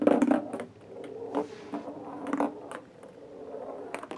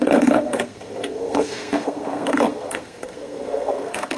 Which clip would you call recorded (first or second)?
first